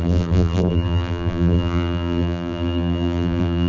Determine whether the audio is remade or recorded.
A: remade